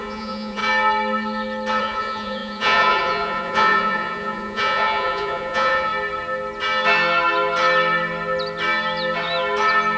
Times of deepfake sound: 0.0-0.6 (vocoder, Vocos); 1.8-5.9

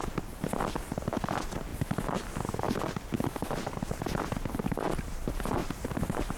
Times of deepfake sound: 3.4-4.1 (vocoder, BigVGAN v2); 5.6-6.4

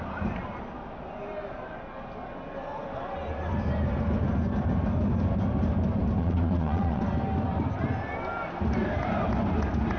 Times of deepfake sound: 6.2-7.0 (vocoder, Vocos)

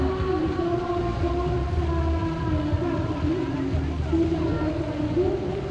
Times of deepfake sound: 0.4-1.0 (vocoder, BigVGAN v2)